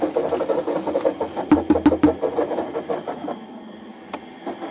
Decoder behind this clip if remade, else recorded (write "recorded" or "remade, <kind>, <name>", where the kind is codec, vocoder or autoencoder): recorded